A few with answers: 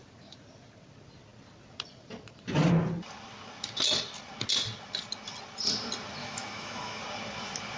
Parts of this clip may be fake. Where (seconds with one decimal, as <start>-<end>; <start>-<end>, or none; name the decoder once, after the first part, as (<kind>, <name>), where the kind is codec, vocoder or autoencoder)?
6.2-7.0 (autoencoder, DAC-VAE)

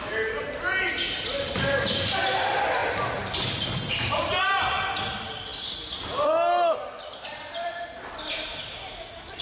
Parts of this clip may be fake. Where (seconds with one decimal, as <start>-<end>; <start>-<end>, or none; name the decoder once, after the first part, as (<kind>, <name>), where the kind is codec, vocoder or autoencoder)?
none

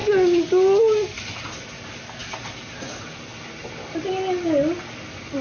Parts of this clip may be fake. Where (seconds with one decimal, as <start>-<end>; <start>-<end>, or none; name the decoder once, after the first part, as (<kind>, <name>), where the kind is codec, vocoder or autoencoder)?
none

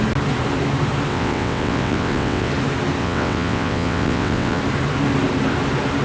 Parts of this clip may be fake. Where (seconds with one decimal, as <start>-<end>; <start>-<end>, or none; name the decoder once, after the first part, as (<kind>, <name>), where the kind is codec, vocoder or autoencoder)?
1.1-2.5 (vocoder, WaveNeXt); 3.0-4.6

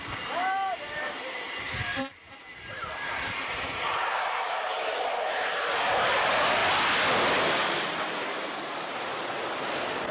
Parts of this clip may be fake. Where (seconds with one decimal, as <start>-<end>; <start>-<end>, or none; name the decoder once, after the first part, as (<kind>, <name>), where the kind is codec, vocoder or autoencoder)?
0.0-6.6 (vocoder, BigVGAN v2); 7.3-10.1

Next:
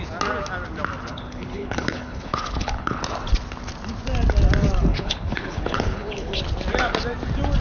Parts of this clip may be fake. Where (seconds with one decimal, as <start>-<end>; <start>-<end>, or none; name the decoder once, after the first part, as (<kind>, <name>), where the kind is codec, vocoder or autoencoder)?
1.1-3.0 (codec, HILCodec); 4.9-6.4